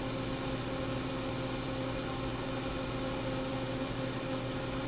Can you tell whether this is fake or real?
real